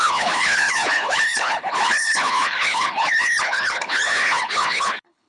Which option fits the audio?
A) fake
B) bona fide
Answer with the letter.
A